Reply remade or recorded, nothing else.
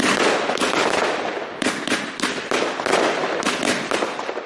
recorded